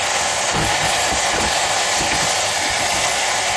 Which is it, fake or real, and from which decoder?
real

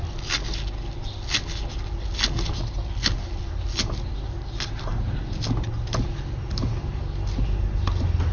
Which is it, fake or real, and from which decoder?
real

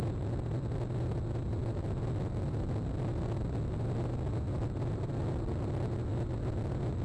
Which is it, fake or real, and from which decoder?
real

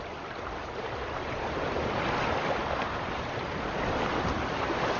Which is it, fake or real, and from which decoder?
real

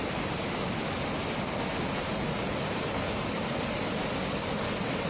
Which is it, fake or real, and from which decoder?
real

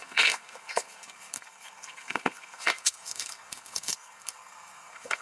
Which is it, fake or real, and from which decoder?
fake, codec, SNAC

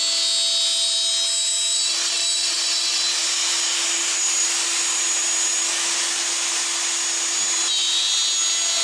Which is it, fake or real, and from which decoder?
real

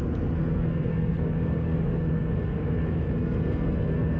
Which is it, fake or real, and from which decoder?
fake, codec, SNAC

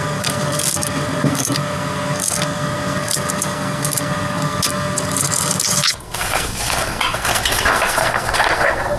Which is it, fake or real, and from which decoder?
fake, codec, SNAC